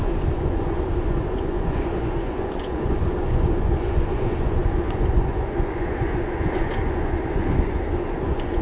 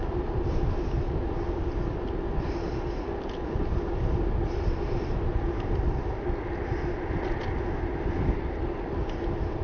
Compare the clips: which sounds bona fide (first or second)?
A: second